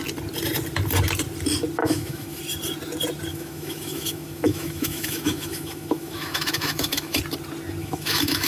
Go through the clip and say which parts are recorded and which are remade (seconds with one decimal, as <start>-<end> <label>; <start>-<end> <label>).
0.0-1.8 recorded; 1.8-2.4 remade; 2.4-3.3 recorded; 3.3-7.2 remade; 7.2-7.8 recorded; 7.8-8.5 remade